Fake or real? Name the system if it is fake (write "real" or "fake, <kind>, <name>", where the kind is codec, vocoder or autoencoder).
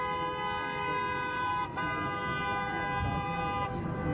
real